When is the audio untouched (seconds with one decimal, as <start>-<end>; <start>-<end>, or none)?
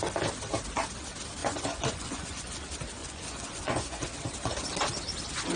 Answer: 0.0-1.4; 2.6-3.0; 4.1-5.6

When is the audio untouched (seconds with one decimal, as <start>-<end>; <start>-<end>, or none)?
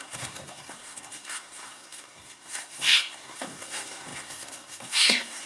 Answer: none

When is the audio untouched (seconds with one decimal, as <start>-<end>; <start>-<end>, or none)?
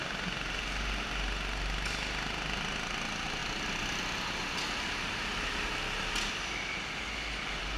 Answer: 0.0-7.8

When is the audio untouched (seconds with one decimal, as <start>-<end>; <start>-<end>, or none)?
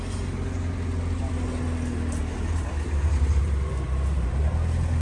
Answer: 0.0-2.2; 4.4-5.0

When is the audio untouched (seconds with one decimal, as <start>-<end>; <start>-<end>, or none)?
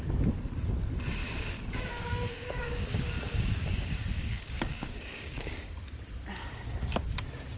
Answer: 0.0-1.2; 5.8-7.6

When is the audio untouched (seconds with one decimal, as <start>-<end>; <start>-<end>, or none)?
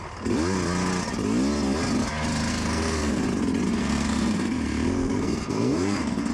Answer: 0.0-2.5; 3.2-3.8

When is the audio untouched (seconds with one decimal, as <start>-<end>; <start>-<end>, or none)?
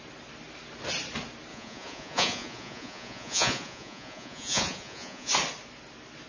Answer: 0.0-1.5; 5.3-6.3